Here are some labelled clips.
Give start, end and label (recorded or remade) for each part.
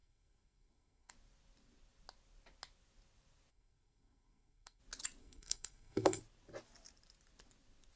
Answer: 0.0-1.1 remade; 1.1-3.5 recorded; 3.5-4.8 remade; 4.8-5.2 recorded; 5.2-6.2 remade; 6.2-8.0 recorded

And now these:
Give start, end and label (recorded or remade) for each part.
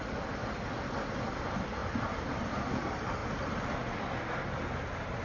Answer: 0.0-1.8 recorded; 1.8-2.5 remade; 2.5-5.2 recorded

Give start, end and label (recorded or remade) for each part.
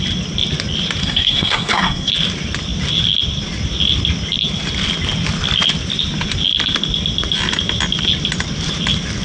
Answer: 0.0-1.0 recorded; 1.0-2.1 remade; 2.1-9.2 recorded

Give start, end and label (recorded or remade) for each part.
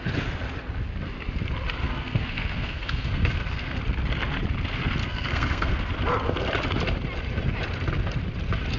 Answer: 0.0-1.8 recorded; 1.8-3.8 remade; 3.8-5.0 recorded; 5.0-5.9 remade; 5.9-8.8 recorded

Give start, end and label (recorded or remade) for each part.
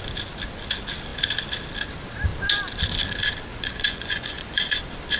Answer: 0.0-3.5 recorded; 3.5-4.8 remade; 4.8-5.2 recorded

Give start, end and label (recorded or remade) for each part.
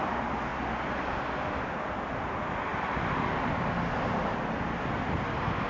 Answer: 0.0-5.7 recorded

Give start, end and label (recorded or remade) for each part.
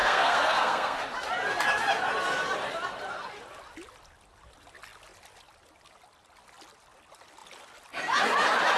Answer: 0.0-1.0 remade; 1.0-8.8 recorded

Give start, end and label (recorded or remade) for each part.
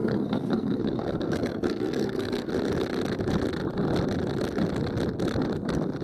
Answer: 0.0-2.5 remade; 2.5-6.0 recorded